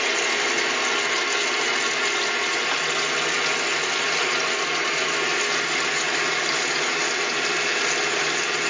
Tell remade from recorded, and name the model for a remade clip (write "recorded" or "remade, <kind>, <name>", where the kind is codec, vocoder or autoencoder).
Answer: recorded